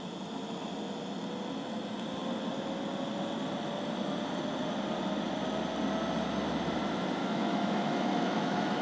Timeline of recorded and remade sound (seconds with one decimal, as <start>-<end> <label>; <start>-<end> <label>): 0.0-7.2 recorded; 7.2-8.8 remade